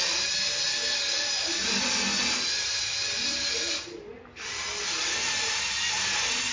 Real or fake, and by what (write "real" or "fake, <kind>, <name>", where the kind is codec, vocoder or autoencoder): real